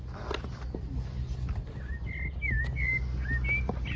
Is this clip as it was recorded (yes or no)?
yes